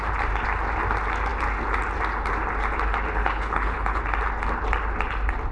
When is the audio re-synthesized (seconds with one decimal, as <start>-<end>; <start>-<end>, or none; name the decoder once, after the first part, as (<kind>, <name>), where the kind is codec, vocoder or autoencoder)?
3.2-4.0 (codec, HILCodec)